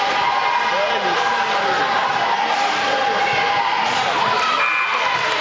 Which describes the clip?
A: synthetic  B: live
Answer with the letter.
B